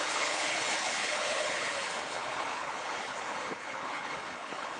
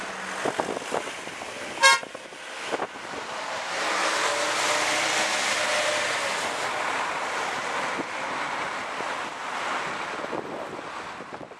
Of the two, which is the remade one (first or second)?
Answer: first